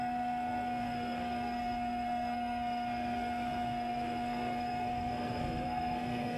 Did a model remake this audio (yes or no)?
yes